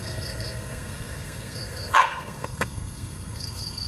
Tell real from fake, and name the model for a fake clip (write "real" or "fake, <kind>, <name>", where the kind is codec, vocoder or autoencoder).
fake, codec, SNAC